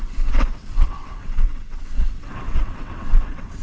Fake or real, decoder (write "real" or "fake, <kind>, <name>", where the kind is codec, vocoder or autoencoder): fake, vocoder, WaveNeXt